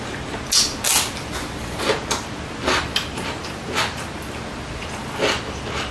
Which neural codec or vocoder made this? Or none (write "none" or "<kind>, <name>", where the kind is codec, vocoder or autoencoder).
none